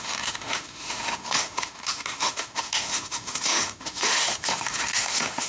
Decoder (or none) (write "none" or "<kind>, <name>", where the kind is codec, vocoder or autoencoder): autoencoder, DAC-VAE